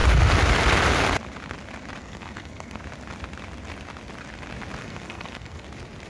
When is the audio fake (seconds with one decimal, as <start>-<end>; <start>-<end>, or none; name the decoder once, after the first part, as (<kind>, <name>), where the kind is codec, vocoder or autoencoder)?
2.0-2.8 (codec, SNAC); 4.8-5.6